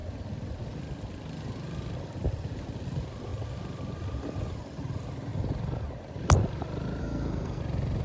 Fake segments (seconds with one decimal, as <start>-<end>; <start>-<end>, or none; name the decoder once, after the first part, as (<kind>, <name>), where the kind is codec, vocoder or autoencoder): 7.0-7.6 (codec, SNAC)